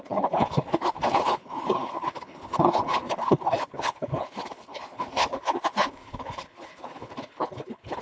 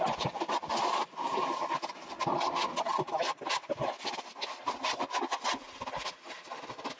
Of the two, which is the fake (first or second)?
first